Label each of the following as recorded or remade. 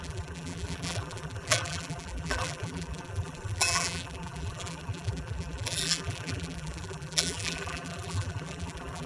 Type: remade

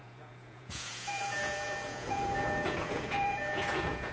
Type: remade